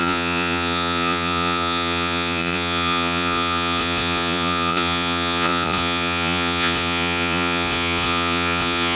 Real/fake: fake